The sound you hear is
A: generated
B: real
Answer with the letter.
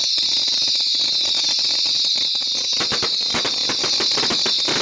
B